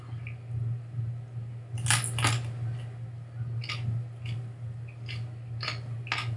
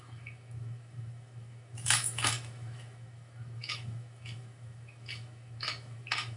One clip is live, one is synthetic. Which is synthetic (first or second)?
second